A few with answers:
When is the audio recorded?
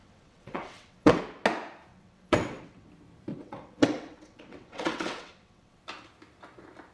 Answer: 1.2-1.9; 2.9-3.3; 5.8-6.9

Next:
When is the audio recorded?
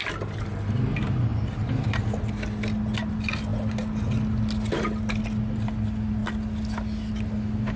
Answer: 0.0-7.8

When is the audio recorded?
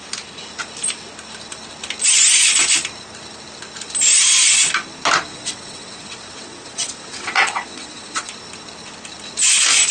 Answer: 0.0-4.2; 4.7-5.3; 8.3-9.9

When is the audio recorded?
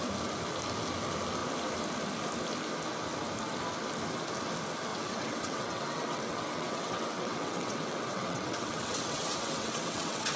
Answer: 0.0-4.9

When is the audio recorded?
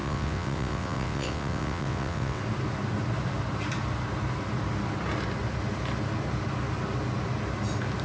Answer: 2.4-8.0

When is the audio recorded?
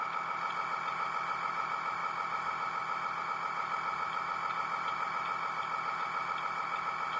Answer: 0.0-7.2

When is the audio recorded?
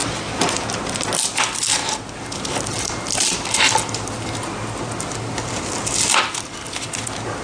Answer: 0.0-7.4